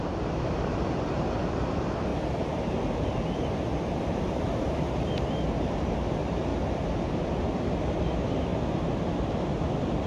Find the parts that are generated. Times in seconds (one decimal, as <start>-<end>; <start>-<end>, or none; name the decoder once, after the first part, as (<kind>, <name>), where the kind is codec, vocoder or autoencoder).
2.1-5.1 (vocoder, BigVGAN v2)